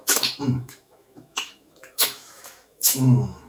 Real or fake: fake